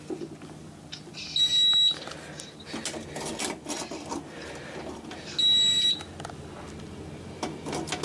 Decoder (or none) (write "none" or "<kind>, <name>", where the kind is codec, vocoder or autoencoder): none